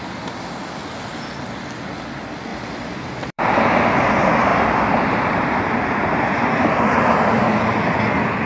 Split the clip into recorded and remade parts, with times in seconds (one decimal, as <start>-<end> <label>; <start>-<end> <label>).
0.0-2.5 recorded; 2.5-3.4 remade; 3.4-4.5 recorded; 4.5-6.8 remade; 6.8-8.5 recorded